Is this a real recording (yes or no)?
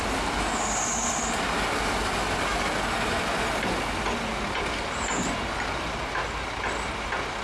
yes